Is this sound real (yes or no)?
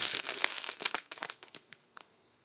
no